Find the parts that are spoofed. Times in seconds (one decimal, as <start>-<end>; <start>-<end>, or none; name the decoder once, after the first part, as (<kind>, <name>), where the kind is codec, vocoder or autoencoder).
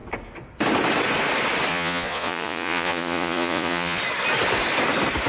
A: 1.7-4.0 (vocoder, Vocos)